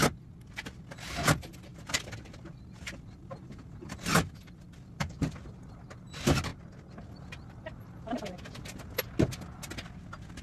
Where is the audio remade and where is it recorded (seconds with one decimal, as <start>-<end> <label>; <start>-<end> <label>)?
0.0-1.7 recorded; 1.7-5.4 remade; 5.4-10.4 recorded